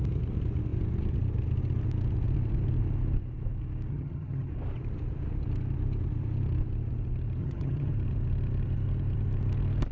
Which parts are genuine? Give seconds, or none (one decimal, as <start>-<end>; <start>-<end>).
0.0-3.9; 4.5-7.4; 7.9-9.9